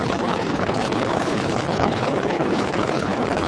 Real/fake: fake